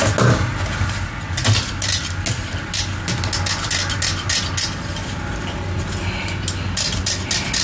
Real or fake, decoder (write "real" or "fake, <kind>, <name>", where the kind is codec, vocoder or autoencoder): real